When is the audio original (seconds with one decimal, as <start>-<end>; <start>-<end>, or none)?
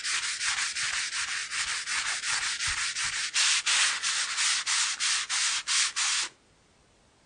0.0-7.3